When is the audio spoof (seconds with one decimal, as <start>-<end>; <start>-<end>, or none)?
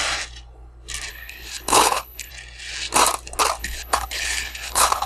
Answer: 1.1-2.3; 3.6-5.1